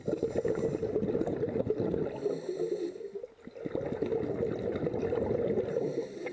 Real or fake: real